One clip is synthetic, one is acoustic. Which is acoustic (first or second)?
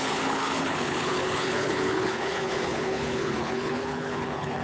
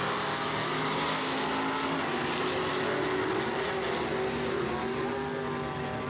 second